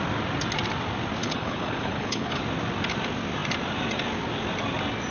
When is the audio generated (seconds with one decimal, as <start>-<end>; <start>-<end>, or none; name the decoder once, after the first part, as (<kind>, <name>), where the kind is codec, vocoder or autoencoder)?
1.2-2.4 (codec, HILCodec)